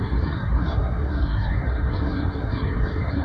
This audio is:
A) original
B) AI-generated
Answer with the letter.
B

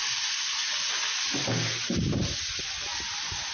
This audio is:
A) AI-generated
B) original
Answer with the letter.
B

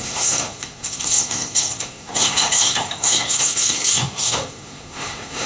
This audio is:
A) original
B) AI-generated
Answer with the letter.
B